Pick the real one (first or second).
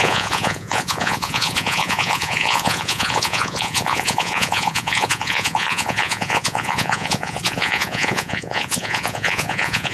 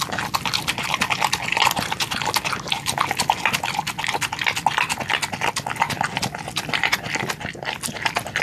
second